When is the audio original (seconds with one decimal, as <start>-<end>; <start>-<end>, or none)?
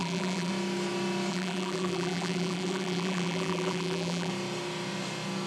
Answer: 0.5-1.3; 4.3-5.5